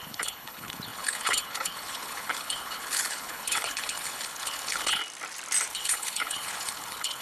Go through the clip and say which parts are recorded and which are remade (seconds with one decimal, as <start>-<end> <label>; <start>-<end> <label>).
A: 0.0-5.0 remade; 5.0-5.7 recorded; 5.7-7.2 remade